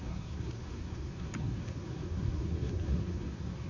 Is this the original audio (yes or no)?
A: no